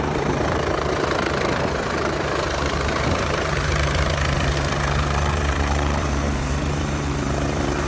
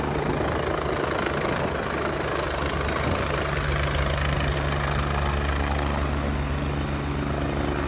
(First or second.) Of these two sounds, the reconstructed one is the first